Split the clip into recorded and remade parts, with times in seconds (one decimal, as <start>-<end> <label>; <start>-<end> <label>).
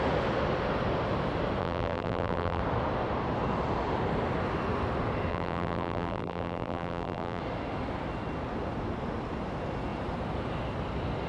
0.0-1.6 recorded; 1.6-2.6 remade; 2.6-5.3 recorded; 5.3-7.4 remade; 7.4-11.3 recorded